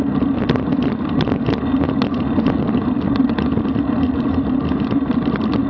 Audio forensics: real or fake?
real